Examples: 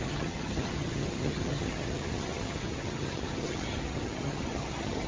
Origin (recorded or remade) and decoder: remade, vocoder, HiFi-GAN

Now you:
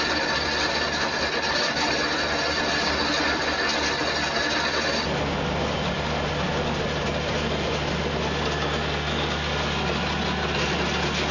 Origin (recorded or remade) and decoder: recorded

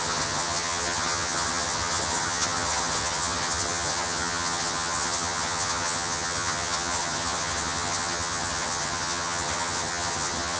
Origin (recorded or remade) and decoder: remade, vocoder, HiFi-GAN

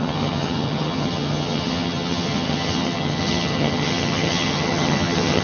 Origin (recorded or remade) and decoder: remade, vocoder, HiFi-GAN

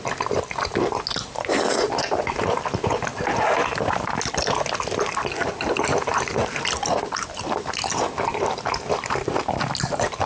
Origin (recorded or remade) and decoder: recorded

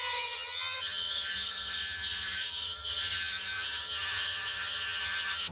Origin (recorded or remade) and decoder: remade, vocoder, HiFi-GAN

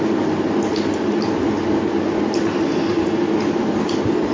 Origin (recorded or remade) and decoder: recorded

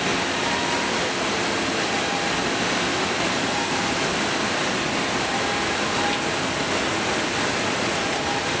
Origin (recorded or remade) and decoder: recorded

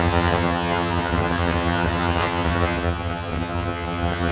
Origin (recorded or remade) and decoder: remade, vocoder, HiFi-GAN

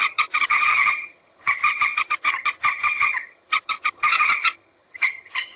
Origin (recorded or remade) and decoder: remade, vocoder, HiFi-GAN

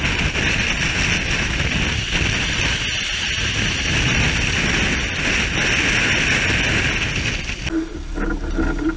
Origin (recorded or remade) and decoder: recorded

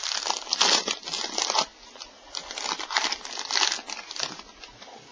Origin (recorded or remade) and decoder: recorded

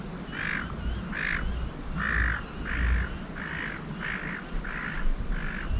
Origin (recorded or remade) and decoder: recorded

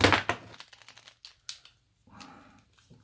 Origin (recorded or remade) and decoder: recorded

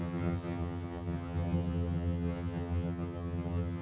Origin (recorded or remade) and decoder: remade, vocoder, HiFi-GAN